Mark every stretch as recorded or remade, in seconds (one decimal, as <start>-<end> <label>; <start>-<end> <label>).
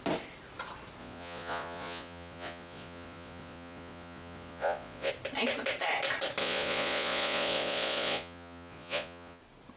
0.0-1.0 recorded; 1.0-5.1 remade; 5.1-6.4 recorded; 6.4-9.4 remade; 9.4-9.8 recorded